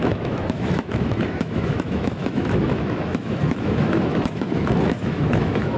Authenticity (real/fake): fake